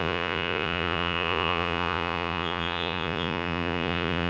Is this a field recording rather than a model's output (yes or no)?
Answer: no